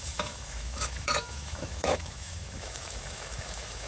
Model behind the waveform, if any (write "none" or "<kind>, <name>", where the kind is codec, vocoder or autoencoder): autoencoder, DAC-VAE